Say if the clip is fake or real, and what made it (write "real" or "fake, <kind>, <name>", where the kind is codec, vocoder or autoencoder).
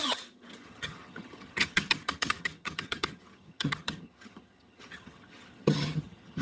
fake, vocoder, HiFi-GAN